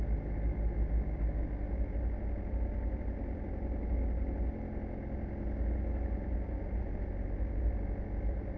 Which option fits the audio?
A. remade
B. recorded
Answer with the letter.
B